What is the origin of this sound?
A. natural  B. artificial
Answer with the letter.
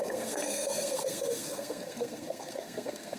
B